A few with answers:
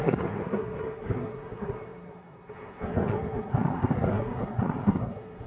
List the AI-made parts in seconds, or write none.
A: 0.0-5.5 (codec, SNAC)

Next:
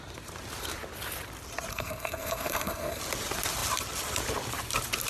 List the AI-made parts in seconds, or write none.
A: 1.7-3.0 (codec, SNAC)

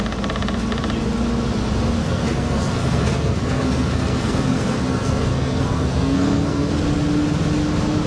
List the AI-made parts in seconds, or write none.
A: 2.0-6.7 (codec, SNAC)

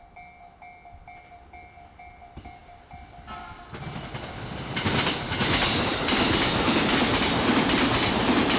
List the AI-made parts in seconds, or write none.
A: none

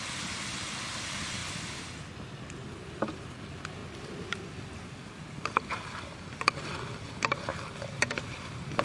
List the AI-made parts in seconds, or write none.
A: none

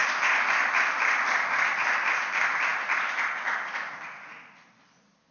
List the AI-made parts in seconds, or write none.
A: none